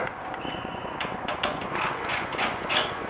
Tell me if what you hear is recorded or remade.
remade